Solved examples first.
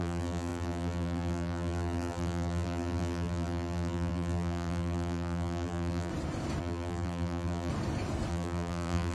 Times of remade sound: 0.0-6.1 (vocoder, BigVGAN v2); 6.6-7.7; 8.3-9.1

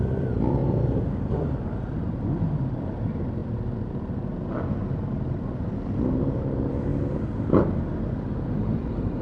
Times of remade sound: 0.0-0.6 (vocoder, BigVGAN v2); 1.2-6.9; 8.5-9.2

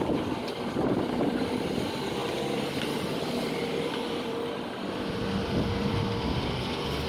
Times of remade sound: 0.0-0.4 (vocoder, BigVGAN v2); 1.4-7.1

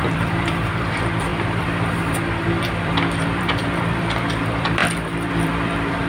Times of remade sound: 0.0-6.1 (vocoder, BigVGAN v2)

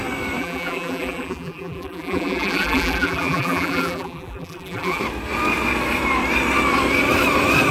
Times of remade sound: 0.4-5.0 (vocoder, BigVGAN v2)

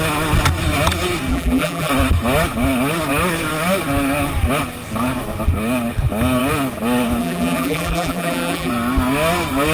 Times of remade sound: 1.3-1.9 (vocoder, BigVGAN v2); 7.2-8.7